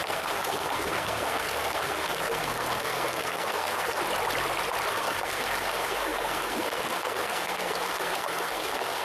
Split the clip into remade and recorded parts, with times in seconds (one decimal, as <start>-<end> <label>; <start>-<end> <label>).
0.0-4.0 remade; 4.0-4.9 recorded; 4.9-9.0 remade